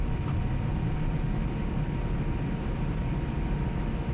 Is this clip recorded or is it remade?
recorded